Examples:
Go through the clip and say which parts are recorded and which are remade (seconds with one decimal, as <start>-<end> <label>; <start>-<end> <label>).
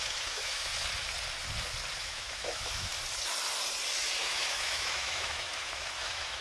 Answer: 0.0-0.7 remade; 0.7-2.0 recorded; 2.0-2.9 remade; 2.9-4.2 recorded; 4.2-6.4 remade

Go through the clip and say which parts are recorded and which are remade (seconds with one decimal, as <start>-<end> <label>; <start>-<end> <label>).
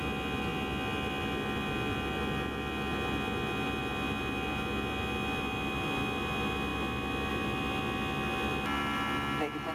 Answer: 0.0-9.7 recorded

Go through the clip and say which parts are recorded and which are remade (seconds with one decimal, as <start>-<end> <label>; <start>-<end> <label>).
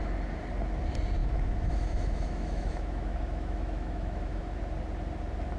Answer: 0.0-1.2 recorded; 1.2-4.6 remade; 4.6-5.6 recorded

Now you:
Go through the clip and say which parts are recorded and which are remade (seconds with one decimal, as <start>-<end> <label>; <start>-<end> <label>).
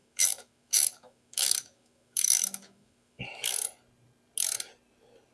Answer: 0.0-3.2 remade; 3.2-5.3 recorded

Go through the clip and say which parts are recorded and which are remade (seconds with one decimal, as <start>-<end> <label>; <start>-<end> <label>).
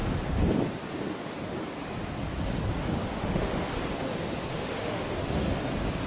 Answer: 0.0-2.8 recorded; 2.8-3.7 remade; 3.7-4.5 recorded; 4.5-5.0 remade; 5.0-6.1 recorded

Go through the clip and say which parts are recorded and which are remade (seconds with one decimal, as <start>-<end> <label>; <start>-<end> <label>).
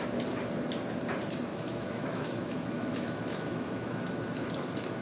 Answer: 0.0-1.5 recorded; 1.5-4.5 remade; 4.5-5.0 recorded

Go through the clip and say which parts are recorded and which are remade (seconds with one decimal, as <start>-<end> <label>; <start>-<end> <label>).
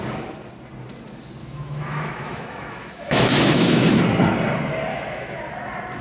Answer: 0.0-1.4 recorded; 1.4-3.9 remade; 3.9-4.9 recorded; 4.9-5.4 remade; 5.4-6.0 recorded